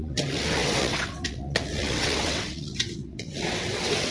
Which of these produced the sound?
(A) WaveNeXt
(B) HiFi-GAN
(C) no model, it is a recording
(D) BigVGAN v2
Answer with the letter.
A